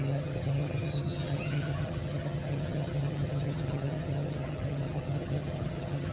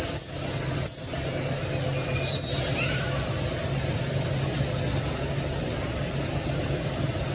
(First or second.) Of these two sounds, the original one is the second